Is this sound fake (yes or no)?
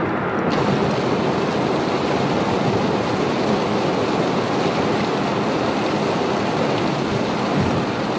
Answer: no